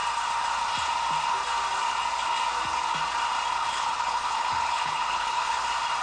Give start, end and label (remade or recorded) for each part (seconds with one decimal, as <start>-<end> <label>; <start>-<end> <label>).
0.0-3.6 recorded; 3.6-5.6 remade; 5.6-6.0 recorded